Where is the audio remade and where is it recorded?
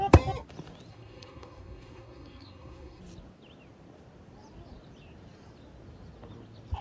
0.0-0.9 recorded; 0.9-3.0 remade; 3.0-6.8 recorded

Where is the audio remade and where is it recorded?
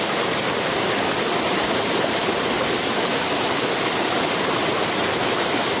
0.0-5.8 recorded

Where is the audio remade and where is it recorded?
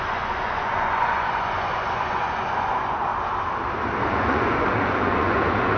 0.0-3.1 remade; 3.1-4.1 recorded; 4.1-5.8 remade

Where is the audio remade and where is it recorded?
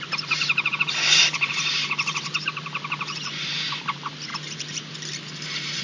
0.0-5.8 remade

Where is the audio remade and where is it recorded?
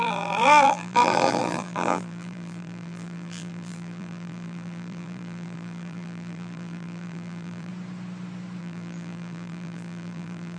0.0-7.7 remade; 7.7-8.6 recorded; 8.6-10.6 remade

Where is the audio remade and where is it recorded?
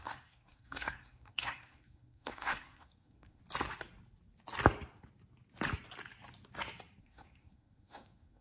0.0-3.4 remade; 3.4-7.0 recorded; 7.0-8.4 remade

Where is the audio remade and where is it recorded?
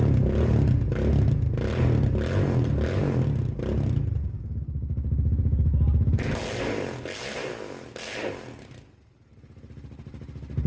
0.0-10.7 recorded